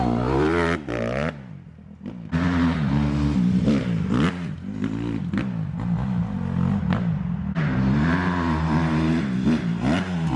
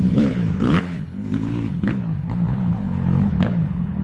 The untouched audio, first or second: first